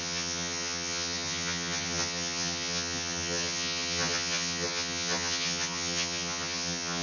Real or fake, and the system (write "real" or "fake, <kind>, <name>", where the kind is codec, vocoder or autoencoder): fake, vocoder, HiFi-GAN